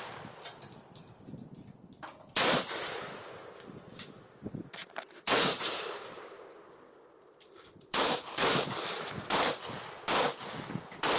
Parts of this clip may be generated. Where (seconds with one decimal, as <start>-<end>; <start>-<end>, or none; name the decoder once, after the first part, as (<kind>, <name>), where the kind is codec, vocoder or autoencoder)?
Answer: 0.0-11.2 (vocoder, BigVGAN v2)